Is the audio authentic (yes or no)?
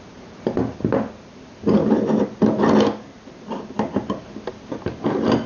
yes